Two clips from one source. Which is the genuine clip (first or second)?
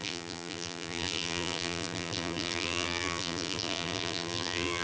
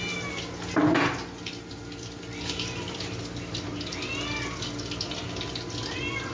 second